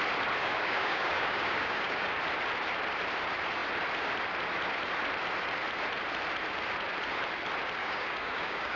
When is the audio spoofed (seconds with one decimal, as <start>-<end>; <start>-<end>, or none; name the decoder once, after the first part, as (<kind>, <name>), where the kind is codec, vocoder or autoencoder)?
0.4-2.1 (codec, DAC); 7.8-8.8